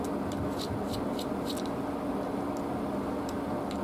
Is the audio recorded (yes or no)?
yes